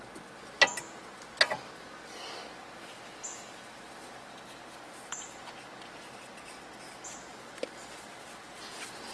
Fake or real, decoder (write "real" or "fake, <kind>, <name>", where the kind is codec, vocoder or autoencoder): real